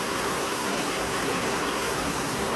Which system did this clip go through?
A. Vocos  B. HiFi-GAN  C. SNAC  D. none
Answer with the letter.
C